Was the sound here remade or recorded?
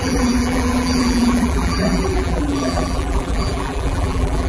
remade